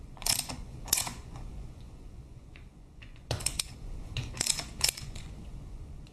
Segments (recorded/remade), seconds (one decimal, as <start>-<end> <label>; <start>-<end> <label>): 0.0-6.1 remade